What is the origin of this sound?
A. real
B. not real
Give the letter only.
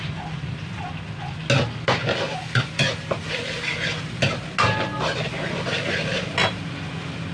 A